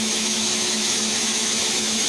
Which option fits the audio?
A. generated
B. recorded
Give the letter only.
A